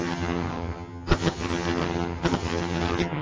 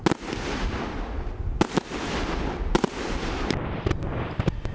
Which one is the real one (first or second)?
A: second